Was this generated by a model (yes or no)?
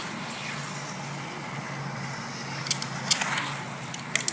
no